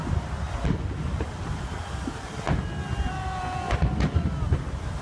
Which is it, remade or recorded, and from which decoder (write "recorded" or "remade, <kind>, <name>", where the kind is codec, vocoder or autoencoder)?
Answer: recorded